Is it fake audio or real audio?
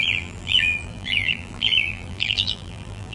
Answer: fake